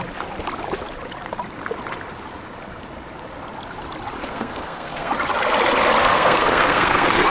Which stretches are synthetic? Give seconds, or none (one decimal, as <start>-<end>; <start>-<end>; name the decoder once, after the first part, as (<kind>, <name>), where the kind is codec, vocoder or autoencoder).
4.2-5.1 (codec, SNAC); 6.0-7.3